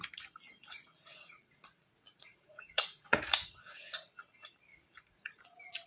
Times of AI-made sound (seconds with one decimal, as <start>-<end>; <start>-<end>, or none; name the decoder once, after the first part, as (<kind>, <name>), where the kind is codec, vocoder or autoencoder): 0.5-4.0 (vocoder, Vocos); 4.7-5.4